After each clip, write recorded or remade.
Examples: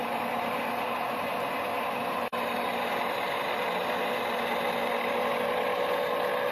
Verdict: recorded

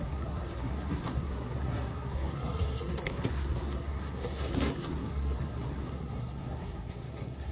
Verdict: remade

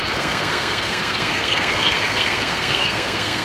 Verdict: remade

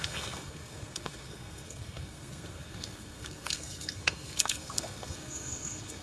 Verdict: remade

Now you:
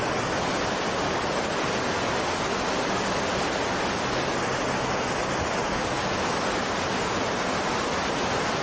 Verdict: recorded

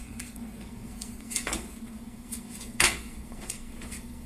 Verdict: remade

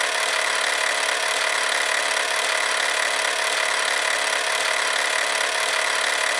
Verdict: recorded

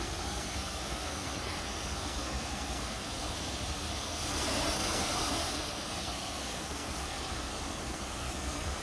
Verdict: remade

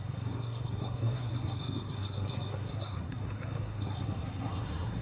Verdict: remade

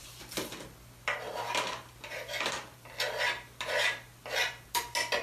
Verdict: recorded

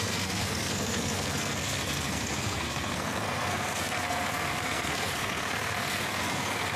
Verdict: remade